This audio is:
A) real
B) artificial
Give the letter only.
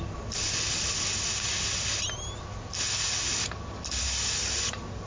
A